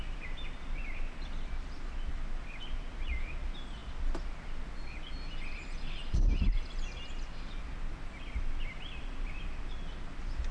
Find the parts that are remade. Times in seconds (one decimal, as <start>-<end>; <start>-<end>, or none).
none